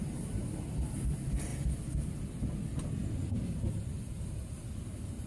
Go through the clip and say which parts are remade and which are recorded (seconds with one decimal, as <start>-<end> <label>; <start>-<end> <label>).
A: 0.0-5.3 recorded